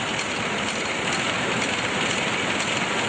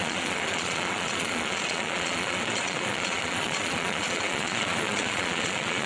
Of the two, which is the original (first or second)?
first